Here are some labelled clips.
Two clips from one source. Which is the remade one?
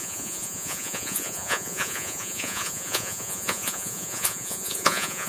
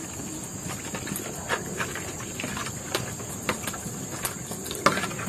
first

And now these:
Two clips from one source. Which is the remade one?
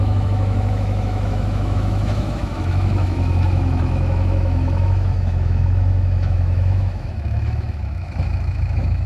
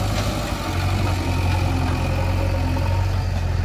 first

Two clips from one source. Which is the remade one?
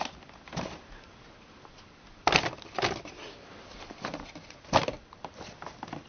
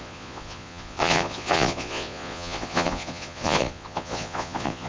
second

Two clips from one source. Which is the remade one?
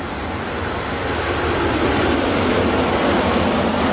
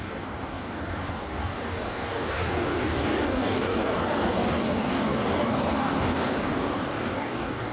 second